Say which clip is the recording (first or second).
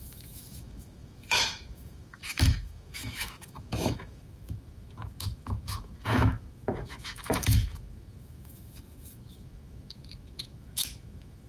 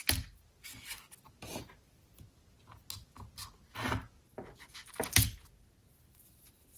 second